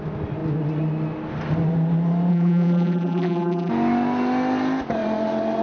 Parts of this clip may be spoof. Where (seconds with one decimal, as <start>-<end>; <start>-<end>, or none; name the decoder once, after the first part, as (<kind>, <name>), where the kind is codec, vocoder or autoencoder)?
2.3-3.7 (vocoder, BigVGAN v2)